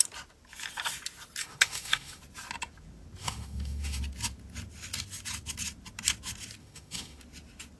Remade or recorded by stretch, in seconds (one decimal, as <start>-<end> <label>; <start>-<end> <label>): 0.0-1.4 recorded; 1.4-2.2 remade; 2.2-3.2 recorded; 3.2-4.0 remade; 4.0-6.6 recorded; 6.6-7.2 remade; 7.2-7.8 recorded